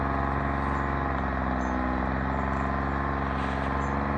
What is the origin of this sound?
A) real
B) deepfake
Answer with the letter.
A